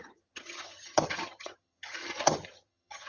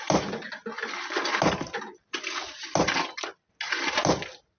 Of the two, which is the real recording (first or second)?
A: second